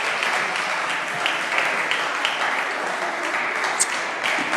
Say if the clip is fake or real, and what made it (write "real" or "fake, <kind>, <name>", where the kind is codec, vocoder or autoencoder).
real